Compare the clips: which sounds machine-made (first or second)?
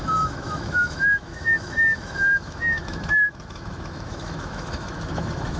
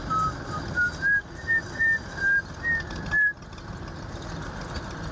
first